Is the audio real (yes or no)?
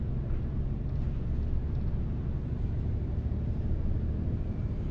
yes